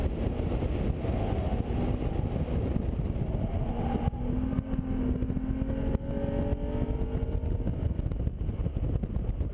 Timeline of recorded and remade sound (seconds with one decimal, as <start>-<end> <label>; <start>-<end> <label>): 0.0-9.5 recorded